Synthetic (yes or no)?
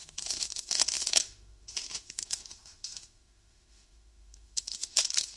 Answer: yes